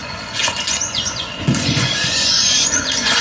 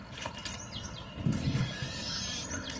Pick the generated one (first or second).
first